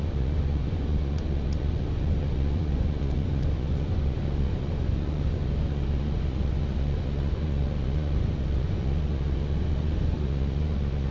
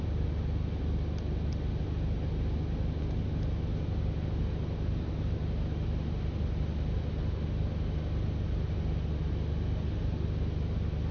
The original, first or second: second